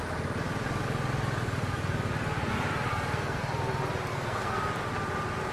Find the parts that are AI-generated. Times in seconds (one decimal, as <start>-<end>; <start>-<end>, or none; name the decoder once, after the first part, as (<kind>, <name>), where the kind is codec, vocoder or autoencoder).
2.9-3.4 (codec, SNAC); 4.1-4.6